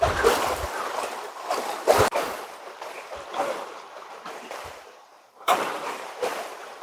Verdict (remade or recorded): remade